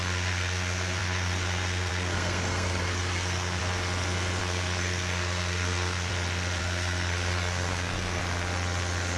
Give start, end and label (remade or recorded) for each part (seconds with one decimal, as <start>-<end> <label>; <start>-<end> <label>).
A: 0.0-3.6 remade; 3.6-4.4 recorded; 4.4-6.1 remade; 6.1-6.6 recorded; 6.6-8.2 remade; 8.2-9.2 recorded